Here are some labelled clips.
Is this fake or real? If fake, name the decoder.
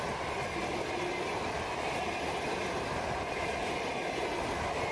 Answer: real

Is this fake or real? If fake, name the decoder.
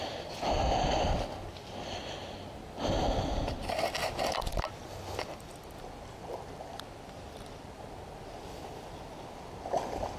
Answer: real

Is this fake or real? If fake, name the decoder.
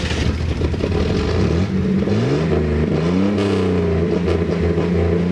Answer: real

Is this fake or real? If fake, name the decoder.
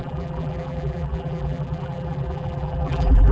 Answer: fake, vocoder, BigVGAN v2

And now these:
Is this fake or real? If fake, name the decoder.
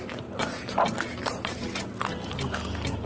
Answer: real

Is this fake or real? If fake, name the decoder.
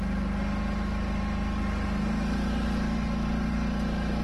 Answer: real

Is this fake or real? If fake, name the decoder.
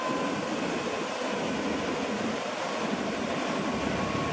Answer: real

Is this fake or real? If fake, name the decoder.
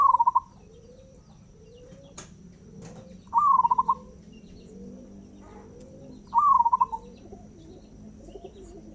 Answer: real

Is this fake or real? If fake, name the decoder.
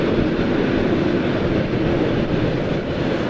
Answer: real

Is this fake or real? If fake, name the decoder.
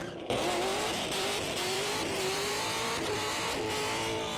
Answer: fake, vocoder, BigVGAN v2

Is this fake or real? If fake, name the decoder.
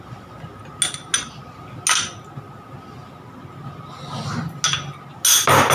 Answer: real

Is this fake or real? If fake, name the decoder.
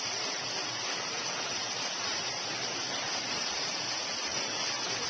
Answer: real